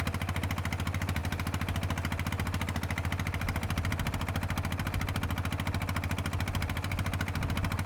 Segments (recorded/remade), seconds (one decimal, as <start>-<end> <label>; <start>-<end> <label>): 0.0-7.9 recorded